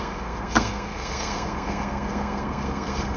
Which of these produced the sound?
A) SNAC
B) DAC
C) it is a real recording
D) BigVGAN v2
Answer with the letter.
A